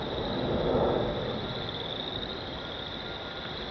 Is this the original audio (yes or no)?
yes